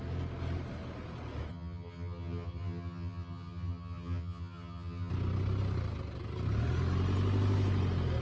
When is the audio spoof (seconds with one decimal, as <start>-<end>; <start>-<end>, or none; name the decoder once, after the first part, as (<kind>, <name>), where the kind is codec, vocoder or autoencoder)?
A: 1.5-5.1 (vocoder, HiFi-GAN)